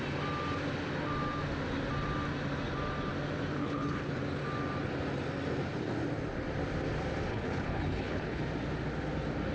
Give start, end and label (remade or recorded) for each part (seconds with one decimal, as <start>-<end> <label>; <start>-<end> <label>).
0.0-3.6 recorded; 3.6-4.1 remade; 4.1-7.3 recorded; 7.3-8.4 remade; 8.4-9.5 recorded